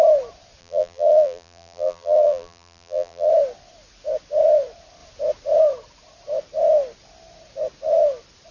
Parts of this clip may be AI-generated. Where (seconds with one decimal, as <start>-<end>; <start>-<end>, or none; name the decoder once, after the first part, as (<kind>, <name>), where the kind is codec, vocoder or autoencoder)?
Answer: 0.6-3.3 (vocoder, BigVGAN v2)